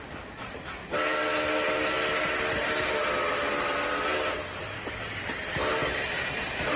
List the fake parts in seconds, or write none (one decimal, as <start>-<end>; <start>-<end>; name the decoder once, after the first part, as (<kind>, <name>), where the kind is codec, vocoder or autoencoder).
5.0-6.8 (vocoder, BigVGAN v2)